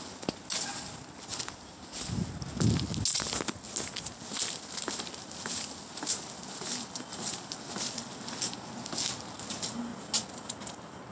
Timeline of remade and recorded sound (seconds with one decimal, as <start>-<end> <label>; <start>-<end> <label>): 0.0-11.1 recorded